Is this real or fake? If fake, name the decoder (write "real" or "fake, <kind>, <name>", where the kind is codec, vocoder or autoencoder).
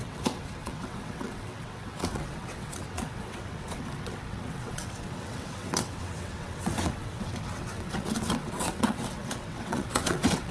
fake, vocoder, WaveNeXt